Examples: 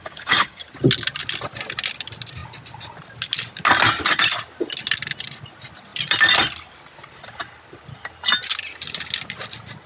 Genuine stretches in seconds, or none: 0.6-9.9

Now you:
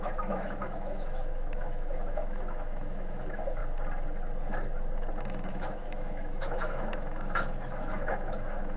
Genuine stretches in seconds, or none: 3.6-5.5